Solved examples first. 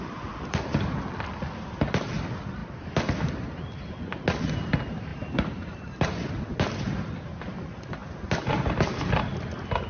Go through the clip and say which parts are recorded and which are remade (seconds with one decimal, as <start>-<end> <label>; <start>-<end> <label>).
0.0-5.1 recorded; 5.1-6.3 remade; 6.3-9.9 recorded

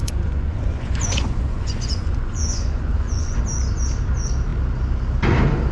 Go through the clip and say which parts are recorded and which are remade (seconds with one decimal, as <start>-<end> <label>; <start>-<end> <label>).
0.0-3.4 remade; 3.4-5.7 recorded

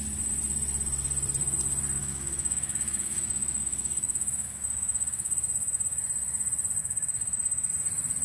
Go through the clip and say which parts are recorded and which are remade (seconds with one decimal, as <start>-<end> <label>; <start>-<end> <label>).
0.0-2.0 recorded; 2.0-6.0 remade; 6.0-6.8 recorded; 6.8-7.7 remade; 7.7-8.2 recorded